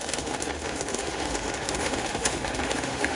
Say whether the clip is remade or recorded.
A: remade